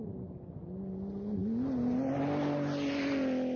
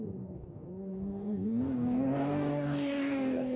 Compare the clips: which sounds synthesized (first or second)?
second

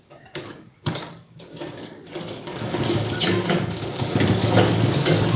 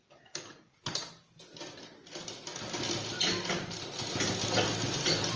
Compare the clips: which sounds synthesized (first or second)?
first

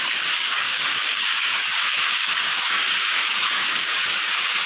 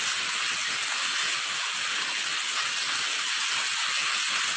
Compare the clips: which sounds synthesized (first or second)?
first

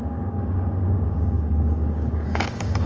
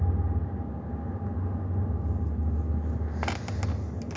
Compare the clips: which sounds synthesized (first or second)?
first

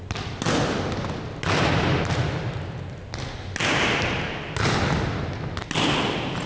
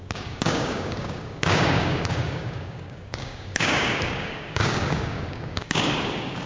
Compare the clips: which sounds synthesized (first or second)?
second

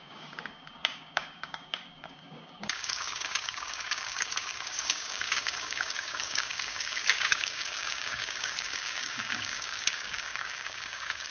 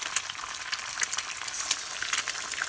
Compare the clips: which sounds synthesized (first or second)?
first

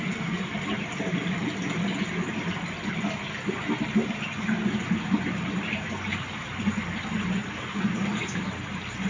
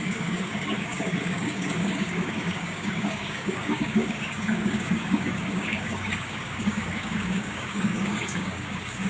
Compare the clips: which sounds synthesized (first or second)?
second